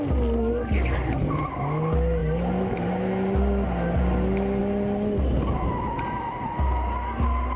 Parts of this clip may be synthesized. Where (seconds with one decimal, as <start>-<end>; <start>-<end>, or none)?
none